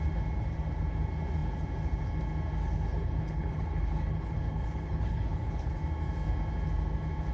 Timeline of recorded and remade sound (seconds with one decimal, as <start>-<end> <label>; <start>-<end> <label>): 0.0-2.6 recorded; 2.6-5.7 remade; 5.7-7.3 recorded